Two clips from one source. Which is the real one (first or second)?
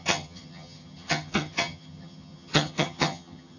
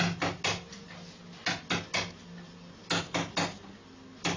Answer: second